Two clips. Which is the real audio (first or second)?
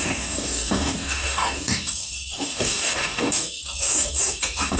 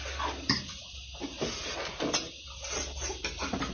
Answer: second